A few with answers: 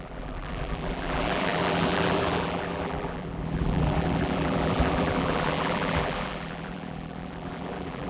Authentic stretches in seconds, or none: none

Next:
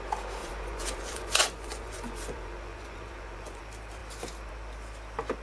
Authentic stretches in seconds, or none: 0.0-0.4; 3.6-5.4

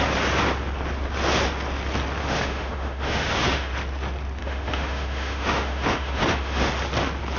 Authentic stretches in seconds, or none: 0.0-2.2; 3.7-4.4; 6.7-7.4

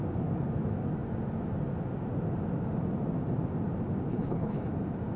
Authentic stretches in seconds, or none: 0.0-4.1; 4.7-5.2

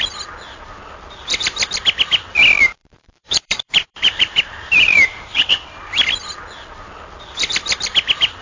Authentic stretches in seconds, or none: 0.0-2.8; 5.5-8.4

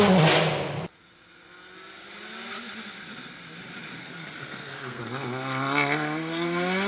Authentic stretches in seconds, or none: 0.0-4.0; 5.0-6.9

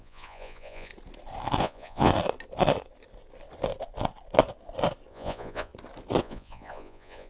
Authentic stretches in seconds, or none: 0.9-1.6; 2.1-5.1; 5.7-6.2